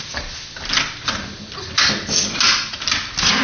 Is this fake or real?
real